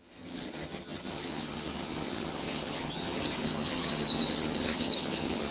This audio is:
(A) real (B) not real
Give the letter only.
B